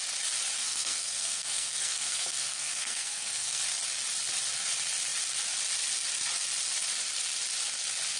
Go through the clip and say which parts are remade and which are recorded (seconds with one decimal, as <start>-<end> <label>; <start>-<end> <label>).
0.0-0.6 recorded; 0.6-3.6 remade; 3.6-8.2 recorded